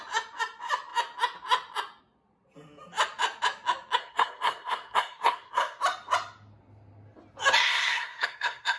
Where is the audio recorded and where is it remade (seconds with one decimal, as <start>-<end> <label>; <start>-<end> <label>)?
0.0-4.0 recorded; 4.0-5.8 remade; 5.8-7.6 recorded; 7.6-8.8 remade